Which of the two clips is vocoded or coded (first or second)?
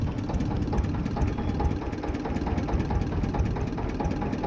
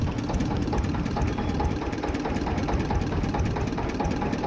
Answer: second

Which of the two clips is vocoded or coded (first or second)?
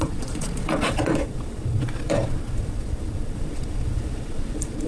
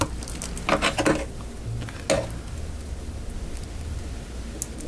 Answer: first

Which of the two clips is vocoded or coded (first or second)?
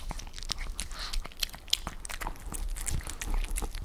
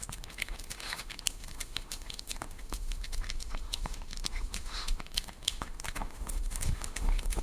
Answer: second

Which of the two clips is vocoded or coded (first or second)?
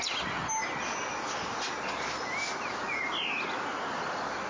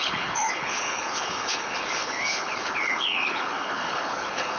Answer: second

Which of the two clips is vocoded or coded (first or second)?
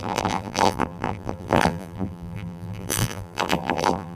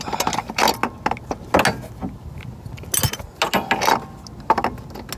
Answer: first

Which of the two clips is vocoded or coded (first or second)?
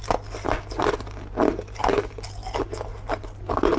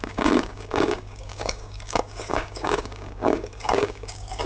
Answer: second